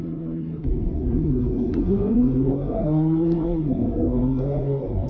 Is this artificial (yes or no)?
yes